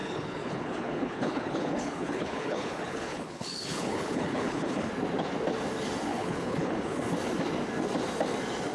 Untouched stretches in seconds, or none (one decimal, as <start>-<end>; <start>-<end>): 4.9-6.1; 7.0-8.7